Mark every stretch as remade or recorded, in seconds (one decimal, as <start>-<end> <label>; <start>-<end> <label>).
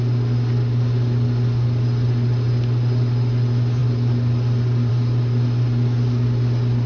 0.0-6.9 recorded